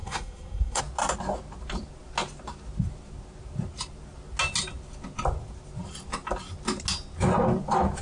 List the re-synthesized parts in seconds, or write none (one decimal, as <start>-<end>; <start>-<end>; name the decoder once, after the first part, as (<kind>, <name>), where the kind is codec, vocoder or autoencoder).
0.0-0.8 (codec, SNAC)